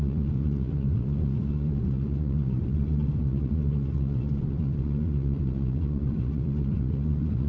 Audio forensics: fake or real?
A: fake